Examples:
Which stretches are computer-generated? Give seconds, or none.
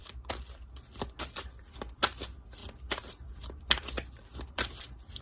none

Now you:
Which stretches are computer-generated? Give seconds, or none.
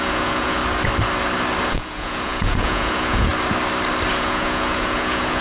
0.0-0.6 (vocoder, Vocos); 1.7-3.3; 4.1-5.4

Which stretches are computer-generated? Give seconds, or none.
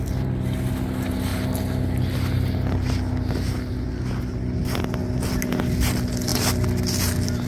none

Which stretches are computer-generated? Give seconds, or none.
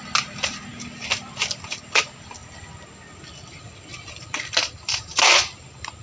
none